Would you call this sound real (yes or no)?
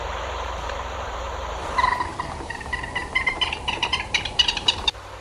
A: no